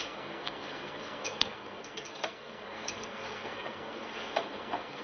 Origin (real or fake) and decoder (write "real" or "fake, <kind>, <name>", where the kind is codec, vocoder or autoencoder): fake, codec, SNAC